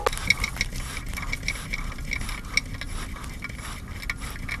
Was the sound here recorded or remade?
recorded